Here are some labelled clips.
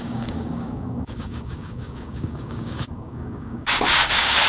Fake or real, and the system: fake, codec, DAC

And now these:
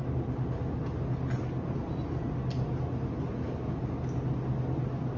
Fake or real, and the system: real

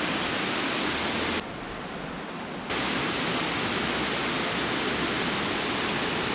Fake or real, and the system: real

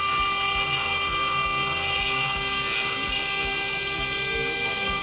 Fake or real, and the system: real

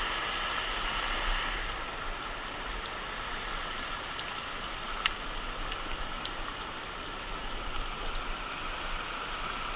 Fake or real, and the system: real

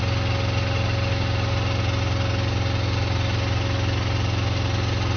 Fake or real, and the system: real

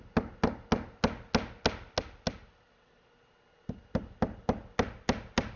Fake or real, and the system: real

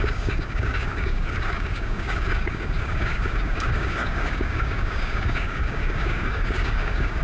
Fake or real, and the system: fake, codec, DAC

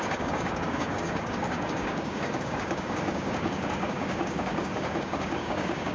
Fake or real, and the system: fake, codec, DAC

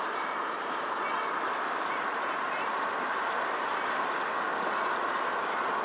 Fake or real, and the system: real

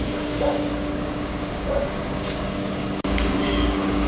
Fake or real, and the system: fake, codec, DAC